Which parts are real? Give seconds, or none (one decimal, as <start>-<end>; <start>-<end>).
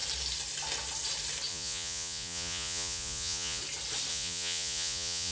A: 0.0-1.5; 3.6-4.1